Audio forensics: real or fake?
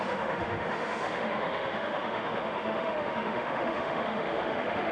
fake